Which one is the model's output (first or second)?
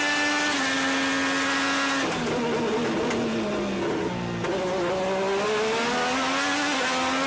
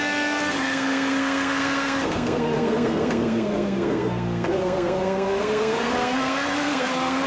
second